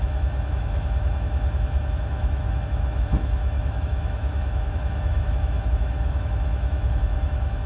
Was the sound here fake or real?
fake